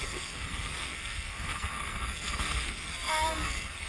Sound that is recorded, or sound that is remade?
remade